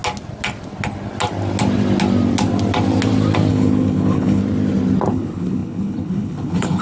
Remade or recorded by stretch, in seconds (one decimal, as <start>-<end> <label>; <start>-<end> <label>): 0.0-3.5 recorded; 3.5-4.4 remade; 4.4-5.1 recorded; 5.1-6.8 remade